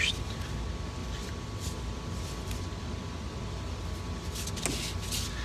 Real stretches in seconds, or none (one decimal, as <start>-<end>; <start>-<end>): 0.0-1.0; 3.6-5.4